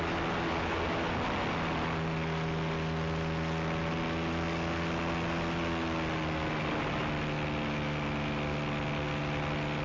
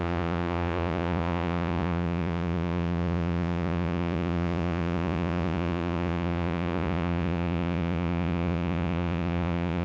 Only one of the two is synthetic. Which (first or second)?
second